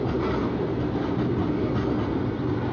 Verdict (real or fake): real